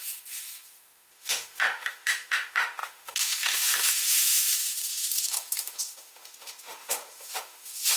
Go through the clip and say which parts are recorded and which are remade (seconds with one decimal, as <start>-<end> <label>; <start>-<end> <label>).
0.0-8.0 remade